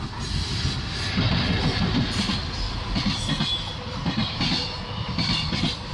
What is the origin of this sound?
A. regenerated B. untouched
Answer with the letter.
B